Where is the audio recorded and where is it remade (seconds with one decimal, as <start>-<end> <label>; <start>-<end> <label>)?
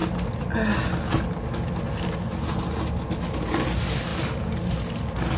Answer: 0.0-5.4 recorded